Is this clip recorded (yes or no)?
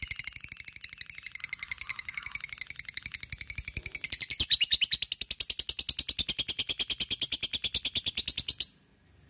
yes